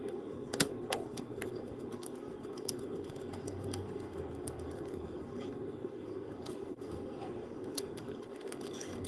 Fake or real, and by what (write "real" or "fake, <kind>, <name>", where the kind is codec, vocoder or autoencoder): fake, codec, SNAC